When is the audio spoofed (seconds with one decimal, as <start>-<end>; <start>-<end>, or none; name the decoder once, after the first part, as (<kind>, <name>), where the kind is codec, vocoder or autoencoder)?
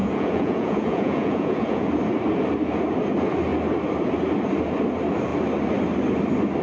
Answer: 0.0-1.9 (vocoder, Vocos)